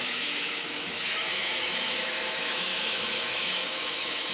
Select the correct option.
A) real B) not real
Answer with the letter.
B